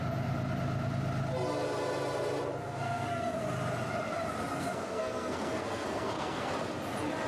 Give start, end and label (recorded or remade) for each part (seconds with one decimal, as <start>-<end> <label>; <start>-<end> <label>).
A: 0.0-2.6 recorded; 2.6-3.4 remade; 3.4-4.5 recorded; 4.5-6.5 remade; 6.5-7.3 recorded